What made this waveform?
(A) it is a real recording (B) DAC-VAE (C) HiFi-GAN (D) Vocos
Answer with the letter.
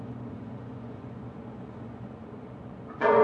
D